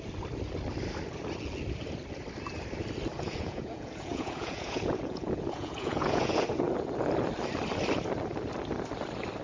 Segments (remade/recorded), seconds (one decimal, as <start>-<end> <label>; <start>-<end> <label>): 0.0-3.1 recorded; 3.1-6.9 remade; 6.9-9.4 recorded